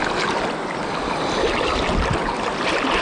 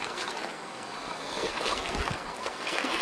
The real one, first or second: first